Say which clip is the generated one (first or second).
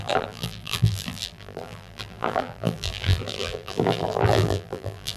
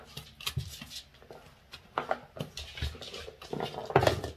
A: first